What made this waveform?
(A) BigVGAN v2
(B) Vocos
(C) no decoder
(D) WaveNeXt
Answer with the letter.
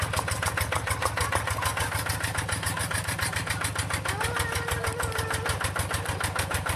C